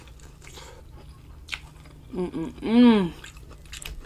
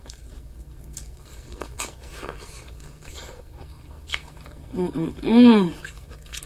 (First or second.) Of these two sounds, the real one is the first